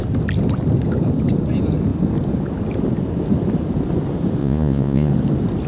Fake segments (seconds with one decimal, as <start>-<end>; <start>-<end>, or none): 4.4-5.1